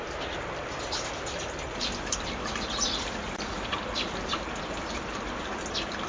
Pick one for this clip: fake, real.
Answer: real